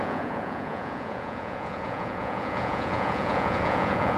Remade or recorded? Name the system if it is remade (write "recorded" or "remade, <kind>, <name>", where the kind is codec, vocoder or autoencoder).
remade, vocoder, Vocos